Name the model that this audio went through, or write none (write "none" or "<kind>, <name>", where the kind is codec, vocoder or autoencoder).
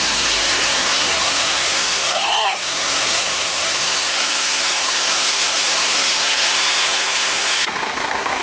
codec, SNAC